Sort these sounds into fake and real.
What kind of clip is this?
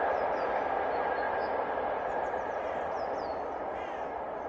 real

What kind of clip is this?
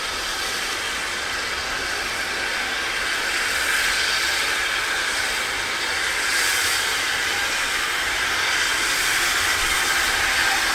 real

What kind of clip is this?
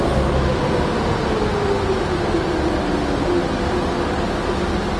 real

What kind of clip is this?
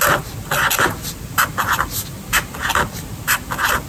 real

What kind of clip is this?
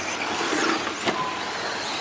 real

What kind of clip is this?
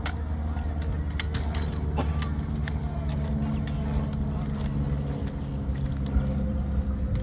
real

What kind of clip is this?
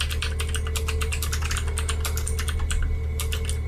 real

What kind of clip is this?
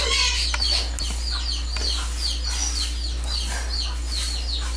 real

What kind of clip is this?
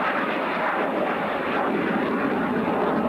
real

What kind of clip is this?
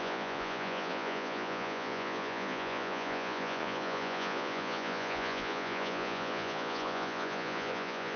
fake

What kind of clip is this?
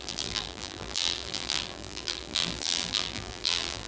fake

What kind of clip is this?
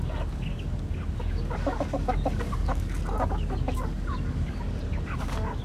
fake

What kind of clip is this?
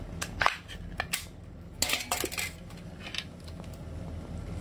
real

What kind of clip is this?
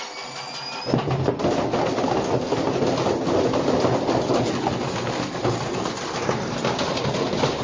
real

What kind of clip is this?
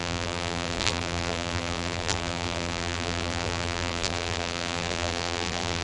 fake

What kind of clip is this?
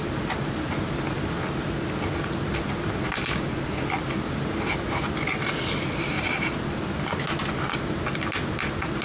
real